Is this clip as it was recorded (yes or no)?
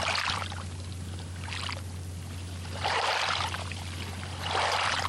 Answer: no